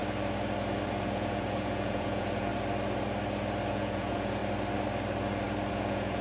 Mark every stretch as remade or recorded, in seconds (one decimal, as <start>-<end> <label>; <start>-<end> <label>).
0.0-1.0 recorded; 1.0-2.5 remade; 2.5-3.7 recorded; 3.7-4.4 remade; 4.4-5.7 recorded; 5.7-6.2 remade